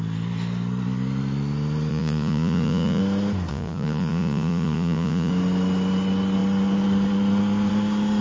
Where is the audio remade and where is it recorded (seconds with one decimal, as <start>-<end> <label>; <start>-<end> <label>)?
0.0-1.9 recorded; 1.9-3.0 remade; 3.0-3.5 recorded; 3.5-5.3 remade; 5.3-8.2 recorded